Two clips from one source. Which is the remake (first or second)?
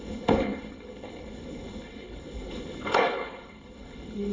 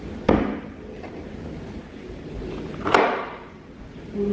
first